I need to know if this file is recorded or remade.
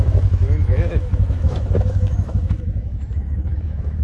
remade